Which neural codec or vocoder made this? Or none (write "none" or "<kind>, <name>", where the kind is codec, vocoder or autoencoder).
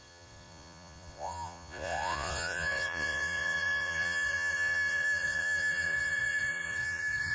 vocoder, Vocos